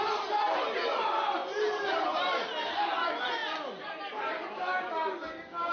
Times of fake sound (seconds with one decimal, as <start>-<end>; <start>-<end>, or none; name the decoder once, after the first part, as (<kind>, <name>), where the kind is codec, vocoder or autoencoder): 1.4-2.3 (vocoder, BigVGAN v2)